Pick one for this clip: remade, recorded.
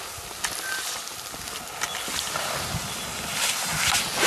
recorded